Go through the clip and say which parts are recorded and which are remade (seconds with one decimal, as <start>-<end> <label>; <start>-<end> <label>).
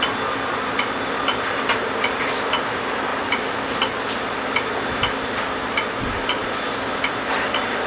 0.0-7.9 recorded